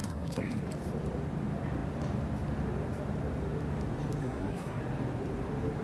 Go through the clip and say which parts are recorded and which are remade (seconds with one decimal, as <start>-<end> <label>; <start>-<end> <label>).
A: 0.0-0.6 remade; 0.6-4.2 recorded; 4.2-4.8 remade; 4.8-5.8 recorded